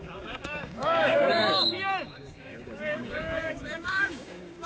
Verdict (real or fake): fake